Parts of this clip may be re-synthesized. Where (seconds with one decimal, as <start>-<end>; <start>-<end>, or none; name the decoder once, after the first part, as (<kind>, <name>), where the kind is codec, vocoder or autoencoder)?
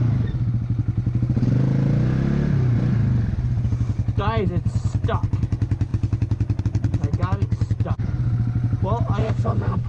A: 9.2-9.9 (autoencoder, DAC-VAE)